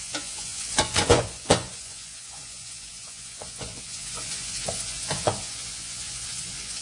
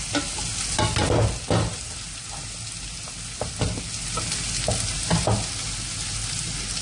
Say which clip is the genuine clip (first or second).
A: second